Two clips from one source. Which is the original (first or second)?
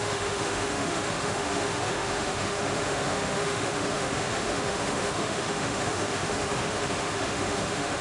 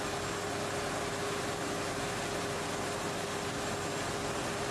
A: second